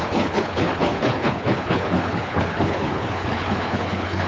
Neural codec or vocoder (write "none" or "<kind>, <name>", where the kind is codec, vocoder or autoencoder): codec, HILCodec